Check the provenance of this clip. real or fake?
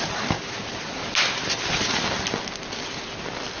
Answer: real